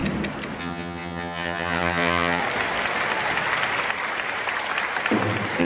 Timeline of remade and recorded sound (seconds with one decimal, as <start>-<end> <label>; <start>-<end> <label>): 0.0-0.6 recorded; 0.6-2.4 remade; 2.4-5.6 recorded